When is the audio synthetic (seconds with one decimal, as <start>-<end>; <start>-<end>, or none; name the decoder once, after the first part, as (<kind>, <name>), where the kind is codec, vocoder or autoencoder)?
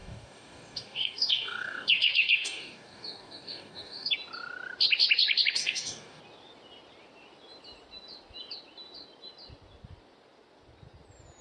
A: 0.0-4.1 (codec, DAC); 5.6-6.2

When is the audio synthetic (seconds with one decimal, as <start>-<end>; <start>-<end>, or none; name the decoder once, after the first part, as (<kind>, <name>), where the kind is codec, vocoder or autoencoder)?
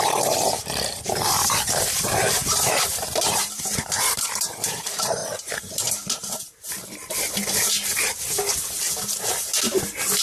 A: 0.0-5.2 (vocoder, BigVGAN v2); 9.2-10.2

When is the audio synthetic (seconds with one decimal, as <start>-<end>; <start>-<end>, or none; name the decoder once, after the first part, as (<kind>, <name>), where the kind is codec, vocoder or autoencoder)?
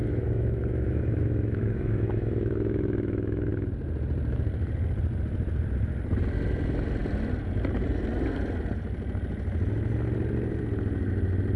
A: 0.0-3.5 (autoencoder, DAC-VAE)